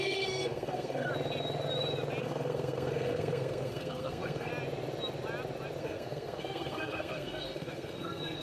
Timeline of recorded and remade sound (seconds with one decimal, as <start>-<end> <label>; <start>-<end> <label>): 0.0-1.1 remade; 1.1-2.2 recorded; 2.2-4.5 remade; 4.5-5.8 recorded; 5.8-8.4 remade